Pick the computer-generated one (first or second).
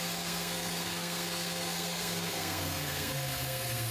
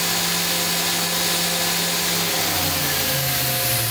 first